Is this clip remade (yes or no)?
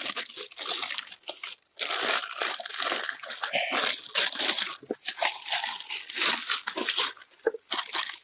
no